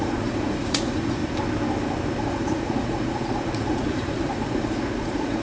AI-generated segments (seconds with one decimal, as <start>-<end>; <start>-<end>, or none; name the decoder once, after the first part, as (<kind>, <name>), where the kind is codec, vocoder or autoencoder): 0.0-1.2 (vocoder, Vocos); 2.2-5.4